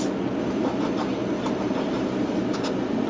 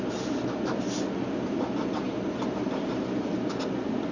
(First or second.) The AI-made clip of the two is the second